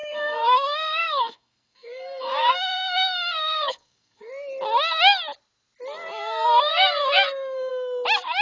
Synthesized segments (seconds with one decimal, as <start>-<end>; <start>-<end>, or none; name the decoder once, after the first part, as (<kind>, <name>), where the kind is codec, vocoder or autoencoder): 0.0-4.3 (codec, SNAC); 6.7-7.7